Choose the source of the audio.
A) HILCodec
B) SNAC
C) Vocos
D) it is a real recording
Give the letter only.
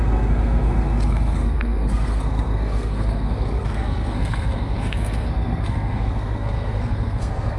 B